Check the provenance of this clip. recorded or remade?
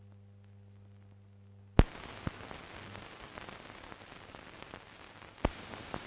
recorded